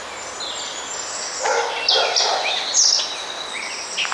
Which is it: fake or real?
real